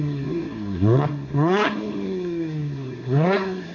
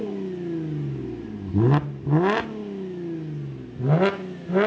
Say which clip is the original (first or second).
second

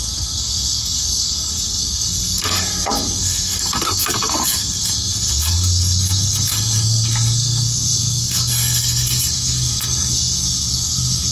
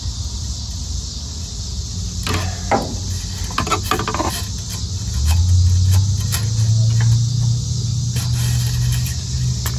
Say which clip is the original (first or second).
second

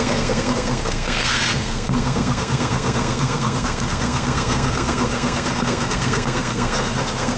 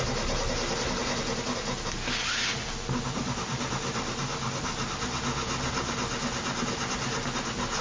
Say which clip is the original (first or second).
second